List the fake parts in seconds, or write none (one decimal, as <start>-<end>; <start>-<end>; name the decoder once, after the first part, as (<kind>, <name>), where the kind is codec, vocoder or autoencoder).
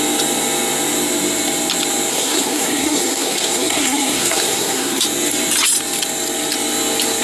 2.1-5.0 (codec, SNAC)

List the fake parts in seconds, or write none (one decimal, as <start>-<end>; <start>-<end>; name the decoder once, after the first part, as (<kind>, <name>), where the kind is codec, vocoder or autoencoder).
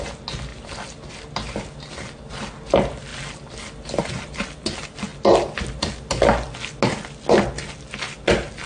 none